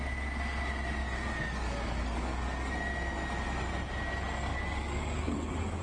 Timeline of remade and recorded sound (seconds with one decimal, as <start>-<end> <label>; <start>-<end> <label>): 0.0-1.0 recorded; 1.0-2.7 remade; 2.7-4.5 recorded; 4.5-5.8 remade